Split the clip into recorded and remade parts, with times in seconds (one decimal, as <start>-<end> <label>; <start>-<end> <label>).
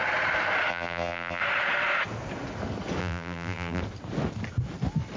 0.0-0.7 recorded; 0.7-1.4 remade; 1.4-3.0 recorded; 3.0-3.8 remade; 3.8-5.2 recorded